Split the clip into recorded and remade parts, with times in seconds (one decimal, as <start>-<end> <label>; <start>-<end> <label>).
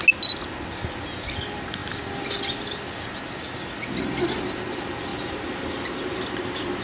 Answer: 0.0-5.1 recorded; 5.1-6.8 remade